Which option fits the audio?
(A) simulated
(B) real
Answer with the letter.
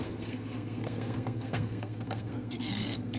A